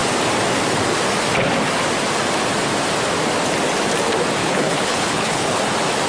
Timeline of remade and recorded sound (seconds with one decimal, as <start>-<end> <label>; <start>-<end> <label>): 0.0-4.4 recorded; 4.4-5.6 remade; 5.6-6.1 recorded